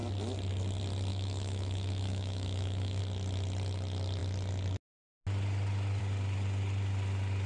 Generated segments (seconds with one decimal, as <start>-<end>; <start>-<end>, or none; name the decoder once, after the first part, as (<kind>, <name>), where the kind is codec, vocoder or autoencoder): 1.1-3.0 (autoencoder, DAC-VAE)